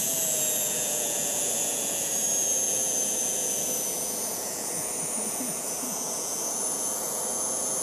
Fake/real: fake